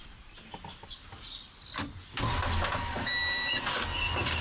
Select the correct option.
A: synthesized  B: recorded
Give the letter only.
B